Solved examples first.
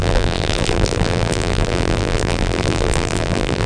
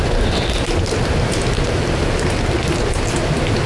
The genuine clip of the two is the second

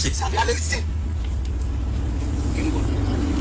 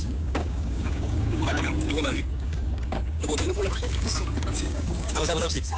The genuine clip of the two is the first